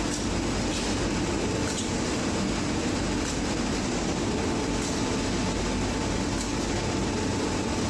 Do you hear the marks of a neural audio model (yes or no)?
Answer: no